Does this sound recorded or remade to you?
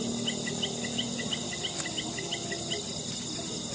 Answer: recorded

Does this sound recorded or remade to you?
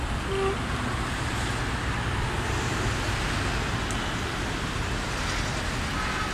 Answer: recorded